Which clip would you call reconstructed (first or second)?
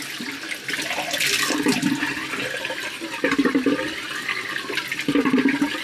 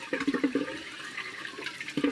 second